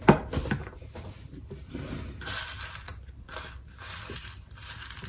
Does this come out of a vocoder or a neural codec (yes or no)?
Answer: no